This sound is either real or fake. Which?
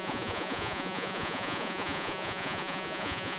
fake